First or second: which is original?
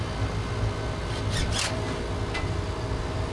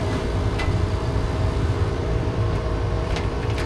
first